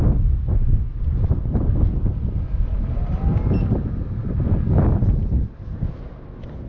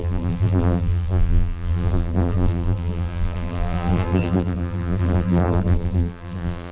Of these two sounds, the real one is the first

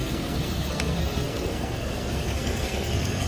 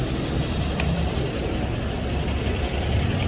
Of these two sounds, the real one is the second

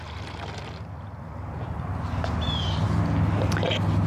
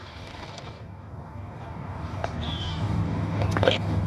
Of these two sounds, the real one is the first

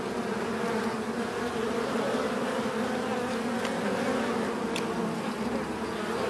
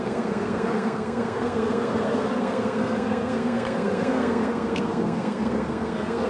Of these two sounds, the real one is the first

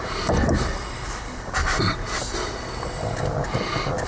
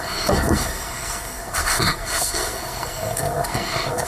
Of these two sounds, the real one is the first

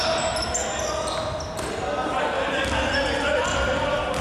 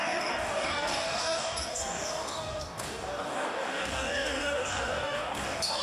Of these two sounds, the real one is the first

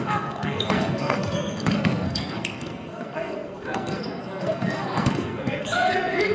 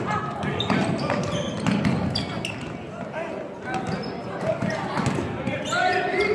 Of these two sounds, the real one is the second